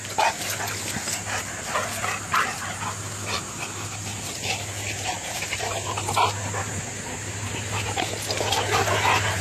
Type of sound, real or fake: real